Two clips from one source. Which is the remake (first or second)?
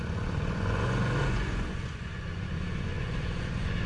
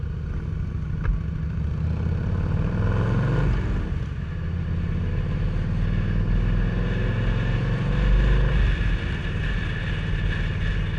first